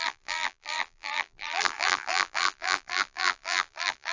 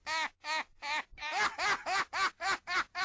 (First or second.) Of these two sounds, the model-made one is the first